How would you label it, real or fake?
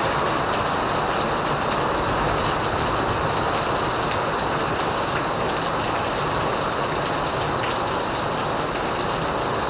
real